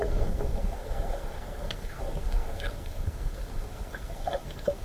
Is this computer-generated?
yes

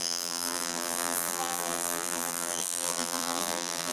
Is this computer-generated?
yes